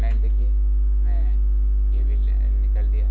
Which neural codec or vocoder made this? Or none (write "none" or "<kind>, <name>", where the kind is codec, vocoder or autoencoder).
none